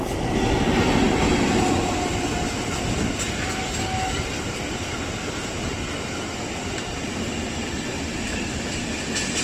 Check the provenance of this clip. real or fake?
real